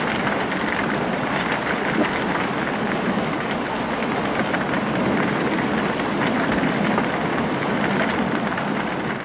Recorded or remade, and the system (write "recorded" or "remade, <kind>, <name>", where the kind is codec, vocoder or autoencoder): remade, vocoder, BigVGAN v2